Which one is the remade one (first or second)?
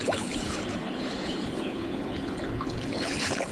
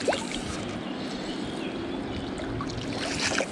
first